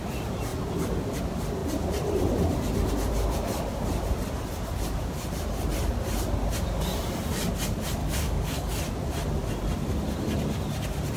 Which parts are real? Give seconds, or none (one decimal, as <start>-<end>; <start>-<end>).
0.0-8.0; 8.8-11.2